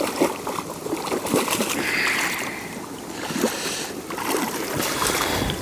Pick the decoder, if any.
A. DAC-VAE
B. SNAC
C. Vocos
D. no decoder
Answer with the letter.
D